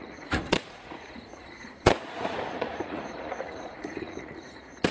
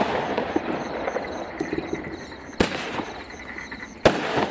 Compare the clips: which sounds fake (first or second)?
first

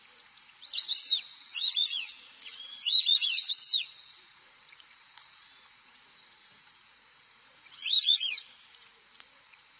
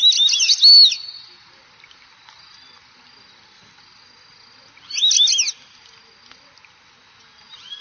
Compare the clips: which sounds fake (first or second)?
first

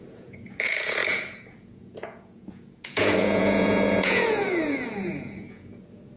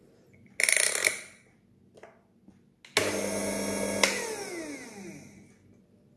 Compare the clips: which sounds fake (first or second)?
first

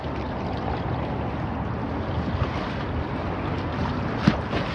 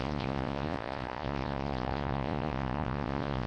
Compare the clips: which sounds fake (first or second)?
second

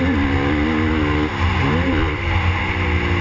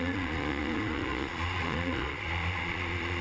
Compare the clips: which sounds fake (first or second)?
second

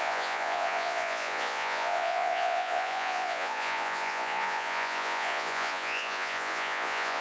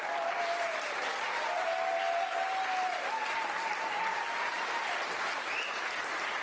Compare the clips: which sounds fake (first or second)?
first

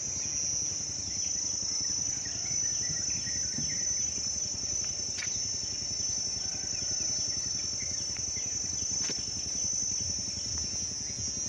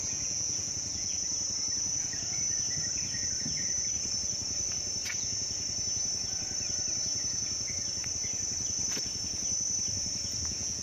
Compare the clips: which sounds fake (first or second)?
second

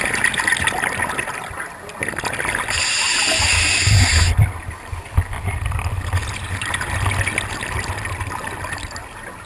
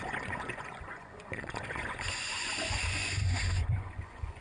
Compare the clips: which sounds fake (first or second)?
second